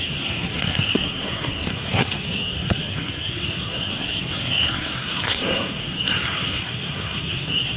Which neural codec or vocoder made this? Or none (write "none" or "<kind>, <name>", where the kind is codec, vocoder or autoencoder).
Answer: codec, SNAC